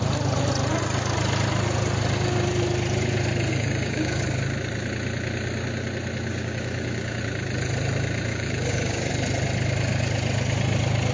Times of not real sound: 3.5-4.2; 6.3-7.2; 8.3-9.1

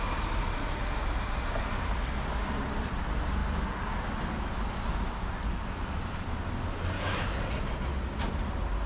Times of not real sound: none

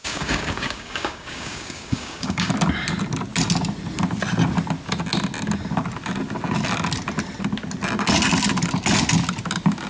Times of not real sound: 0.0-2.5

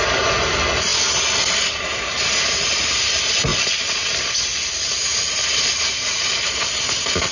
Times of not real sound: none

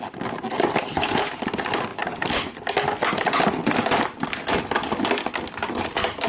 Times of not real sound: none

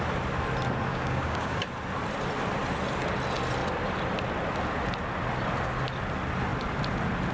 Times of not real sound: 0.9-1.6

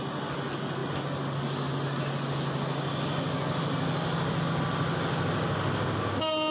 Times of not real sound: none

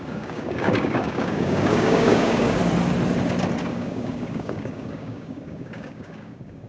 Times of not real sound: 0.0-2.6; 3.7-6.7